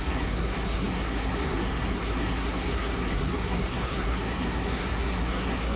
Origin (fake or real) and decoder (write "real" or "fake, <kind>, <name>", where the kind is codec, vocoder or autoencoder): fake, codec, SNAC